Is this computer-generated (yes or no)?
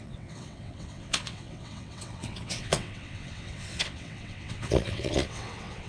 yes